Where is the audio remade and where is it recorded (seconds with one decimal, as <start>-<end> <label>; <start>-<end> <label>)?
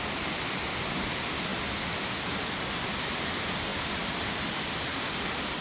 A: 0.0-1.5 remade; 1.5-3.0 recorded; 3.0-5.6 remade